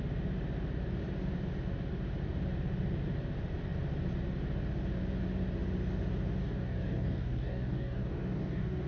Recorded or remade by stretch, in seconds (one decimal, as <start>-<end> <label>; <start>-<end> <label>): 0.0-6.4 recorded; 6.4-8.9 remade